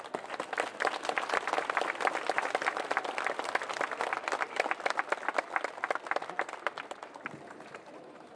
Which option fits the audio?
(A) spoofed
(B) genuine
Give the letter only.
B